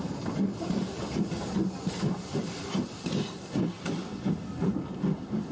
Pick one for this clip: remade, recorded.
recorded